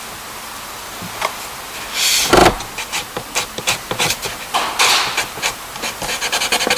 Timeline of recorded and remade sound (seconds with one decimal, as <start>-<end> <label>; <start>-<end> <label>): 0.0-6.8 recorded